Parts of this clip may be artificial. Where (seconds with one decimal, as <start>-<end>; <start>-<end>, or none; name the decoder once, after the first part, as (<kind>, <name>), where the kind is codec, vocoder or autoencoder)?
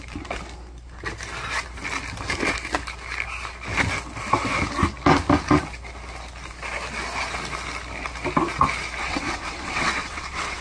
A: 9.0-10.6 (vocoder, WaveNeXt)